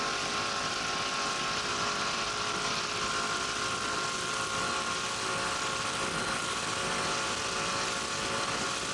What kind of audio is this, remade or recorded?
recorded